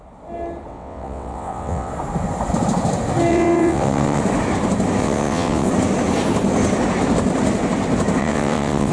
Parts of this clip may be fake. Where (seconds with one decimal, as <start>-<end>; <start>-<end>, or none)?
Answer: 0.7-1.9; 3.3-4.2; 5.0-5.7; 8.2-8.9

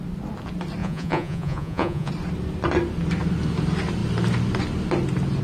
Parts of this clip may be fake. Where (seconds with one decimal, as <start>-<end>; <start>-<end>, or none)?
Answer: 0.8-2.1

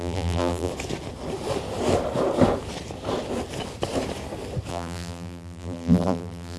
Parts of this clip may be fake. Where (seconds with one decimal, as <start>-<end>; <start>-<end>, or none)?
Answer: 0.0-0.7; 4.7-6.6